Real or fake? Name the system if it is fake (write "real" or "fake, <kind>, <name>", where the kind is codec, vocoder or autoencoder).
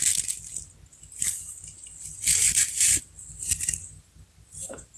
real